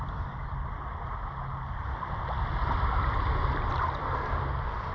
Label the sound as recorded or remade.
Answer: recorded